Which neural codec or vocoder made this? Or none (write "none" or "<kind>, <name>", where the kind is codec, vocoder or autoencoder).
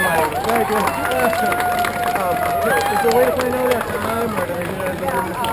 none